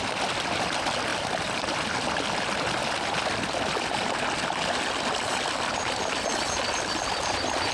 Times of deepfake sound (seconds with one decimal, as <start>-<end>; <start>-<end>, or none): none